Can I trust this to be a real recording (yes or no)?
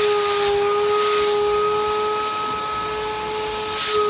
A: yes